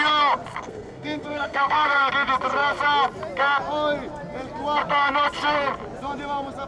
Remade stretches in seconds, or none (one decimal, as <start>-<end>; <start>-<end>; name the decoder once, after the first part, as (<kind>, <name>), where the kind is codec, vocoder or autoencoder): 0.5-2.1 (codec, SNAC)